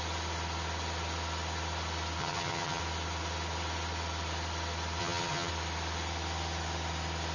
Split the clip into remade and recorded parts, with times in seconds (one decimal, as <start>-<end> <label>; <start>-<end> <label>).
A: 0.0-2.2 recorded; 2.2-2.8 remade; 2.8-5.0 recorded; 5.0-5.5 remade; 5.5-7.3 recorded